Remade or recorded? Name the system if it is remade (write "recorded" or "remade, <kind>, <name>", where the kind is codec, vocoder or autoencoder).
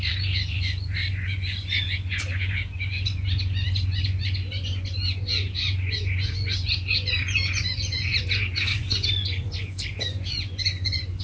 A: remade, vocoder, Vocos